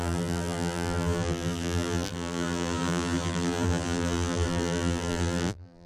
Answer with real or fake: fake